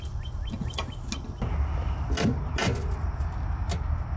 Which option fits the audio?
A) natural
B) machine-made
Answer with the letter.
A